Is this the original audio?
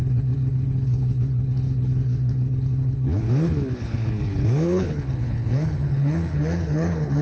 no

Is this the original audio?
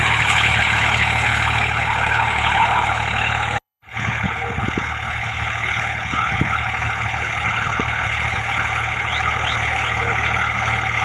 no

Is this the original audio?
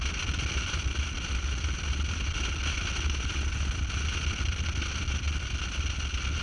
yes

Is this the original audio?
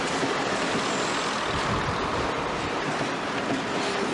yes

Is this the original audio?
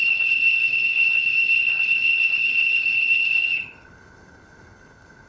no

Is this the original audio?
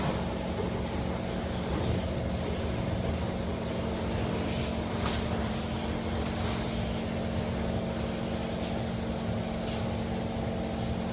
yes